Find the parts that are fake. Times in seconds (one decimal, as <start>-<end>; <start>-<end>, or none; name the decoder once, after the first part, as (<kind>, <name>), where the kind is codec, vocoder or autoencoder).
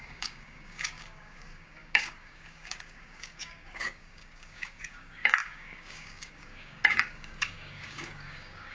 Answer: 0.0-8.7 (codec, DAC)